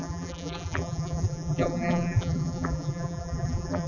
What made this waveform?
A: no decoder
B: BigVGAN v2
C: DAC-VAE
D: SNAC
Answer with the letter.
B